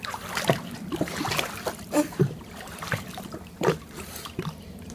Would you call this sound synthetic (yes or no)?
yes